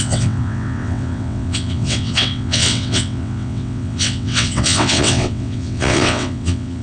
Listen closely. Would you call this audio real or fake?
fake